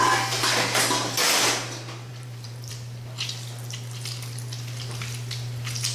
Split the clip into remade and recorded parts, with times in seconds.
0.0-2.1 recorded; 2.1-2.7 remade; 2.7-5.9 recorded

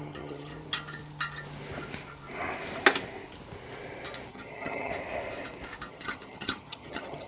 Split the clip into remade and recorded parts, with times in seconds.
0.0-0.5 remade; 0.5-4.3 recorded; 4.3-4.9 remade; 4.9-5.9 recorded; 5.9-7.3 remade

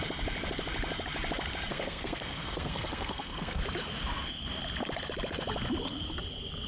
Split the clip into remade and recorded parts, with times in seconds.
0.0-1.7 recorded; 1.7-3.6 remade; 3.6-6.7 recorded

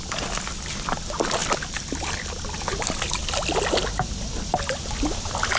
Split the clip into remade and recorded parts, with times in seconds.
0.0-5.6 recorded

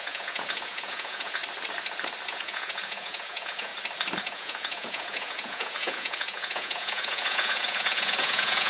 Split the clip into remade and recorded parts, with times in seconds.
0.0-1.4 remade; 1.4-2.3 recorded; 2.3-3.7 remade; 3.7-4.2 recorded; 4.2-8.7 remade

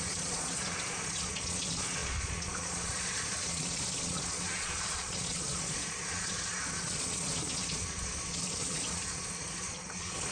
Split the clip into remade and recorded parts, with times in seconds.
0.0-10.3 remade

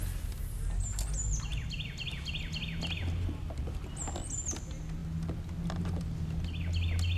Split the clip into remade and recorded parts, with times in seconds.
0.0-7.2 recorded